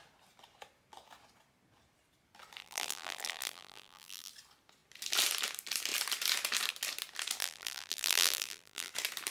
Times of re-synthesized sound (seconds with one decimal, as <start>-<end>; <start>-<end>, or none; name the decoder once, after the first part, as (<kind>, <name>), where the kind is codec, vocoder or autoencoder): 2.6-4.3 (vocoder, BigVGAN v2); 7.4-8.9